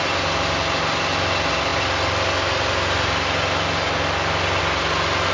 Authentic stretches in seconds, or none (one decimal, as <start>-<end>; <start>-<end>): 0.0-5.3